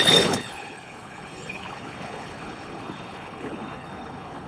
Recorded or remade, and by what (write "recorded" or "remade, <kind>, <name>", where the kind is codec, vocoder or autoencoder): remade, codec, HILCodec